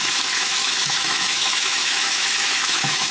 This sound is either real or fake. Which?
fake